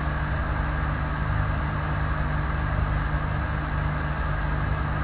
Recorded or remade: recorded